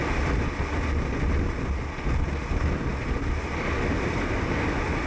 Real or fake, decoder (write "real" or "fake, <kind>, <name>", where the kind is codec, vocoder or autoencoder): real